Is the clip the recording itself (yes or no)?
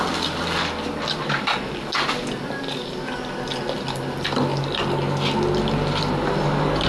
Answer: yes